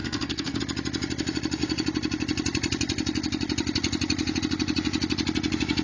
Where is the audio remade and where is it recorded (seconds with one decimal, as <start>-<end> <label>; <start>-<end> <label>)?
0.0-0.6 remade; 0.6-5.8 recorded